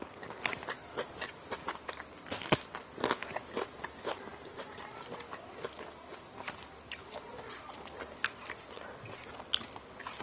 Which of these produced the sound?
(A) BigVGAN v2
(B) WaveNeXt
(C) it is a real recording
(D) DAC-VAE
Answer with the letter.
C